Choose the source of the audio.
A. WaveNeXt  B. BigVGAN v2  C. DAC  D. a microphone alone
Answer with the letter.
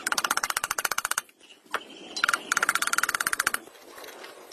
D